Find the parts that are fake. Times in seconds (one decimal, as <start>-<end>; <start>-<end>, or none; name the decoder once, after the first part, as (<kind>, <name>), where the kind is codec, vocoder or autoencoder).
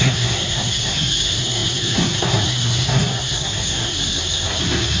0.0-5.0 (codec, SNAC)